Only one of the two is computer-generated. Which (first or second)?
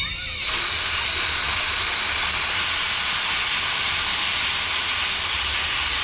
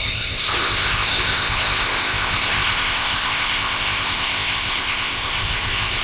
second